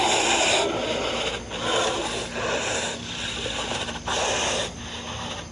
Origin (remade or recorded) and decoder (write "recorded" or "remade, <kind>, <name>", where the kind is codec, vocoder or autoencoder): recorded